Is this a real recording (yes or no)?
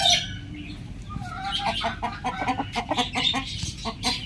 yes